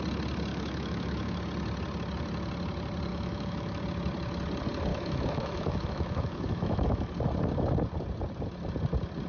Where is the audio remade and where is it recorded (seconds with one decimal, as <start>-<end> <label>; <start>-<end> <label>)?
0.0-0.5 recorded; 0.5-1.4 remade; 1.4-3.1 recorded; 3.1-3.8 remade; 3.8-4.9 recorded; 4.9-7.1 remade; 7.1-9.3 recorded